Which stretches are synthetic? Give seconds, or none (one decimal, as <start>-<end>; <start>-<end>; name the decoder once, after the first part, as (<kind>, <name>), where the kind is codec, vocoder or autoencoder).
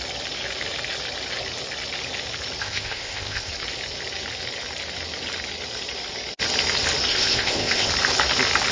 2.6-3.5 (codec, ZipCodec); 7.1-7.9